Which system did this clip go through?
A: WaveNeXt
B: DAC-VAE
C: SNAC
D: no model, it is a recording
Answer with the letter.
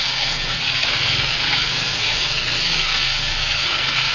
C